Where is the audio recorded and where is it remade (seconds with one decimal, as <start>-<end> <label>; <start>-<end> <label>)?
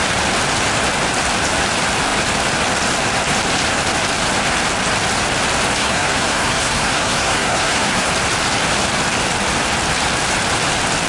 0.0-5.8 recorded; 5.8-8.1 remade; 8.1-11.1 recorded